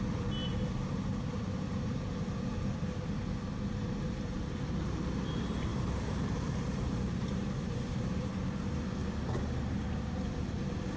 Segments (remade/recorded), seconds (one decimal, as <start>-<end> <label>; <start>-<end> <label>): 0.0-0.4 recorded; 0.4-2.3 remade; 2.3-5.7 recorded; 5.7-8.3 remade; 8.3-9.0 recorded; 9.0-10.2 remade; 10.2-11.0 recorded